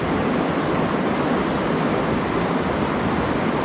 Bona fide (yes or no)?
yes